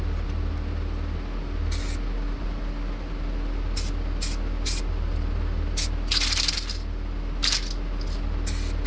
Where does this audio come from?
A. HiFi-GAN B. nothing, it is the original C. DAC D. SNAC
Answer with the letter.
B